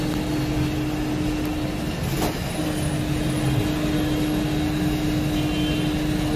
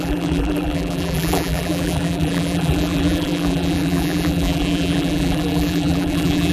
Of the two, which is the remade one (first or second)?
second